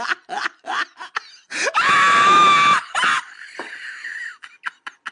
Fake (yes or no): no